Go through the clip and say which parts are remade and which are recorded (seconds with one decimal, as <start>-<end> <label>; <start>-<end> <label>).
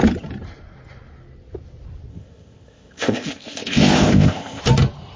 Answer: 0.0-2.1 recorded; 2.1-4.6 remade; 4.6-5.2 recorded